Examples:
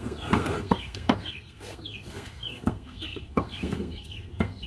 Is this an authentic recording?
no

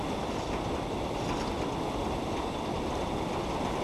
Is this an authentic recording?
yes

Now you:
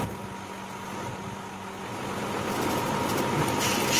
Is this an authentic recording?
yes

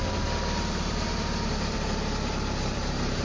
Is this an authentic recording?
no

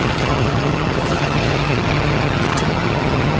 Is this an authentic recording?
no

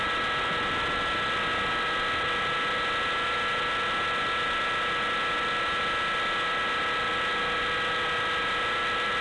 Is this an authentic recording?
yes